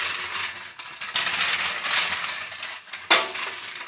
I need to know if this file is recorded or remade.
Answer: recorded